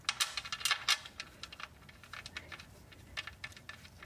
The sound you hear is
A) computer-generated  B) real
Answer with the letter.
B